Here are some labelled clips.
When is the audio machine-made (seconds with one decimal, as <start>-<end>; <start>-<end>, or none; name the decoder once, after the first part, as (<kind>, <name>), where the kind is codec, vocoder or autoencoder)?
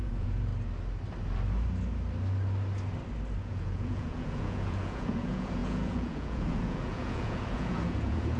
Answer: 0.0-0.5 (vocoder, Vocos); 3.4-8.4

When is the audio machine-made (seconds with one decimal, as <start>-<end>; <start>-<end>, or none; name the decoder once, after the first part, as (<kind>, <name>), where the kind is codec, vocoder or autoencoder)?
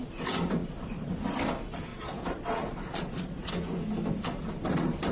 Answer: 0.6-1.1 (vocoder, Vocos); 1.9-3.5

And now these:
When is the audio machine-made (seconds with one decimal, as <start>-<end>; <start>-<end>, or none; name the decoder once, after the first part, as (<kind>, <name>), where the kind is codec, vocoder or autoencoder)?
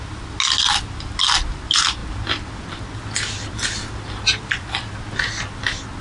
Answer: none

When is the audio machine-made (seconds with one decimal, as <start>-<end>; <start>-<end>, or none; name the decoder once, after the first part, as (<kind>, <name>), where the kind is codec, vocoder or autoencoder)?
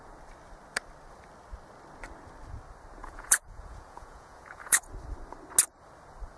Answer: 3.0-4.9 (vocoder, Vocos)